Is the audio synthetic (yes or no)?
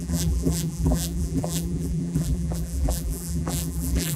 yes